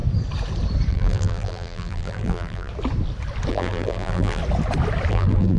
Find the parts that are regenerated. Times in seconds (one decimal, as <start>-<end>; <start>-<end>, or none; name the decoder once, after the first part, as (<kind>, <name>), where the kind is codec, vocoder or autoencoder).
0.9-2.7 (vocoder, BigVGAN v2); 3.5-4.4; 5.1-5.6